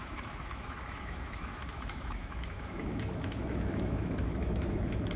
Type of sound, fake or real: fake